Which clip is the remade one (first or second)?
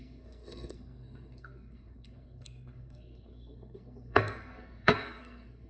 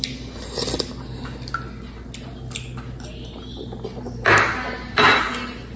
first